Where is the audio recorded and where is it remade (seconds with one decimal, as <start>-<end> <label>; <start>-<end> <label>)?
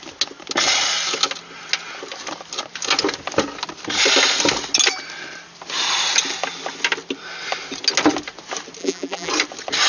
0.0-8.8 recorded; 8.8-9.3 remade; 9.3-9.9 recorded